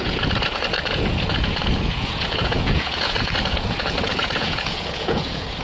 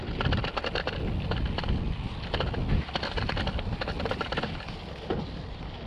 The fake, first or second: first